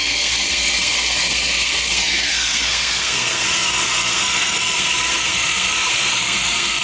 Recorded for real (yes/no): no